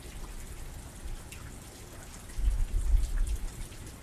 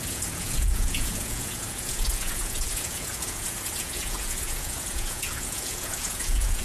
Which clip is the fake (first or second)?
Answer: second